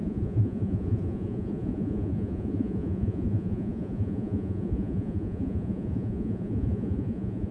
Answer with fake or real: fake